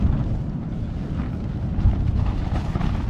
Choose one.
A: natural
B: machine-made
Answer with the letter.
A